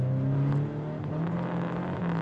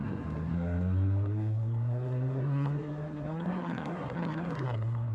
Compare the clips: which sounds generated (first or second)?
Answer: second